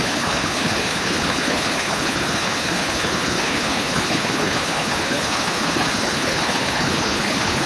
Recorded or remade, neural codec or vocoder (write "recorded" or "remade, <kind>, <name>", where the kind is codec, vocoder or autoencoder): remade, codec, HILCodec